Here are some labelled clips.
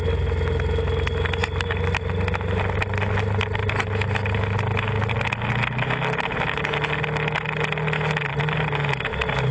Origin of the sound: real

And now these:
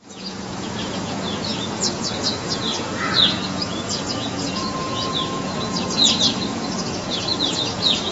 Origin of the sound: fake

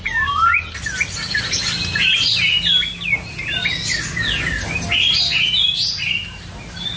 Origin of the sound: real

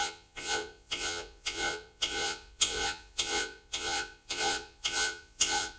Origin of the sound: fake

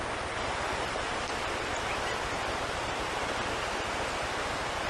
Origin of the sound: real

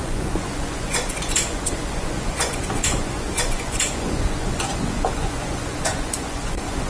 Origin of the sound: fake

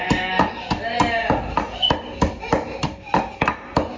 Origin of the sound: real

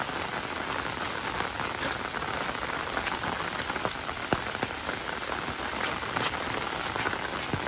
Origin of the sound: real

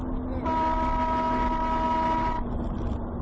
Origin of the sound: real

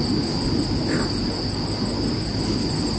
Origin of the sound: real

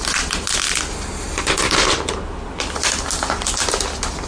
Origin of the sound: real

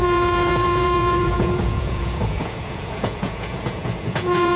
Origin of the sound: fake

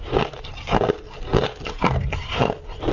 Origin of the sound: real